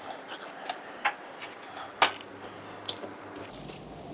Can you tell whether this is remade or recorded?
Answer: recorded